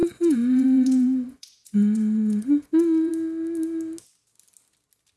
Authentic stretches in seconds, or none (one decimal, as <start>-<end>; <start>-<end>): 3.1-5.2